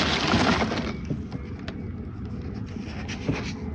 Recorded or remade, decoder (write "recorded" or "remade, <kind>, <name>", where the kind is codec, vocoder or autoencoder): recorded